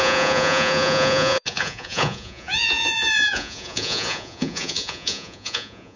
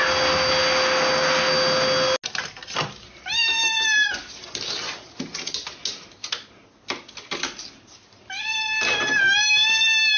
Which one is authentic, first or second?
second